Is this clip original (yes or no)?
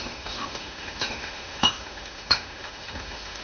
no